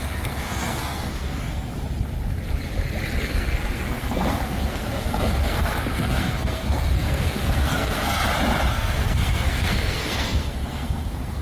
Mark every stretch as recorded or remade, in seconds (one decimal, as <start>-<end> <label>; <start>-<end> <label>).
0.0-1.7 remade; 1.7-3.2 recorded; 3.2-8.2 remade; 8.2-8.7 recorded; 8.7-11.4 remade